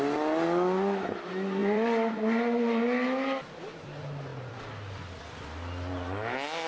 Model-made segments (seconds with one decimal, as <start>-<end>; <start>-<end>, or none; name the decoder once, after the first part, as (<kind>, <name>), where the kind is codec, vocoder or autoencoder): 1.6-2.1 (vocoder, BigVGAN v2); 4.3-5.2